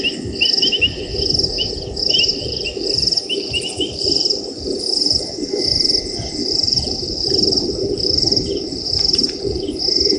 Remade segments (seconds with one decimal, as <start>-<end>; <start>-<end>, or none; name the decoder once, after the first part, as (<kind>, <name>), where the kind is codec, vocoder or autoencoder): 2.3-5.2 (vocoder, BigVGAN v2); 6.4-9.7